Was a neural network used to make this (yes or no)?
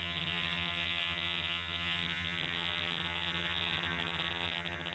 yes